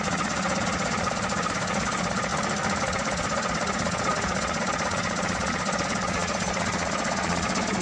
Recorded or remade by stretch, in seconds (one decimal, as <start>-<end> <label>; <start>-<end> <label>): 0.0-2.3 remade; 2.3-2.8 recorded; 2.8-7.8 remade